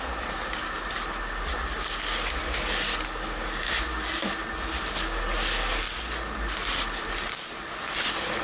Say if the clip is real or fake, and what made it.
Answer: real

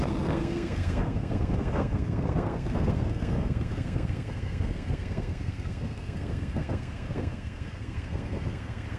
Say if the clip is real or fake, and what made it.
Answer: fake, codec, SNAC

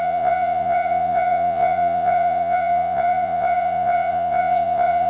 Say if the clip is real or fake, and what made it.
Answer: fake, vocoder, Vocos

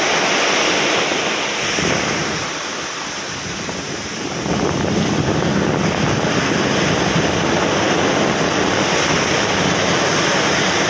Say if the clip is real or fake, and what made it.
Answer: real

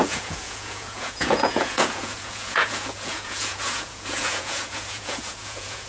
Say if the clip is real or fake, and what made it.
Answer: fake, vocoder, Vocos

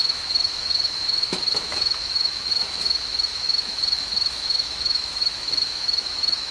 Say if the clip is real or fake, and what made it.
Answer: fake, autoencoder, DAC-VAE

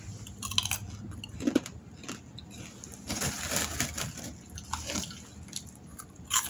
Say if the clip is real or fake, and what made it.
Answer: real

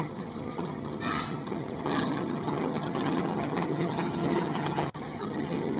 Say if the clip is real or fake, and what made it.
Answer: fake, vocoder, HiFi-GAN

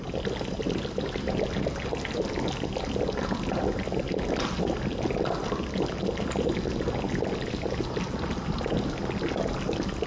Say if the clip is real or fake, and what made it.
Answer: real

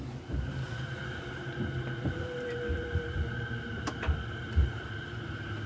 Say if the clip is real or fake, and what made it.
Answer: fake, vocoder, BigVGAN v2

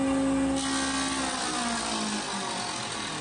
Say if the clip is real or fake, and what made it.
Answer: real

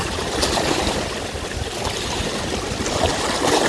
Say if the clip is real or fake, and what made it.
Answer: fake, vocoder, BigVGAN v2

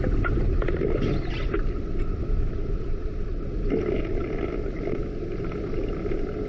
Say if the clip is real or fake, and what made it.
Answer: real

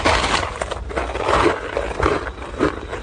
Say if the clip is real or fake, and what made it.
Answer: real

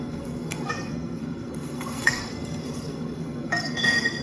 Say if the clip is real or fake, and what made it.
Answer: fake, codec, SNAC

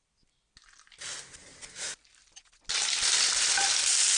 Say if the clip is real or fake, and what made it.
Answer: real